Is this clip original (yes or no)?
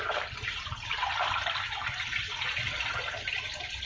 yes